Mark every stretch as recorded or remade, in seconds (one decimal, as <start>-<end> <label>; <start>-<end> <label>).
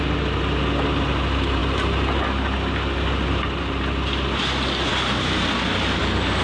0.0-6.4 recorded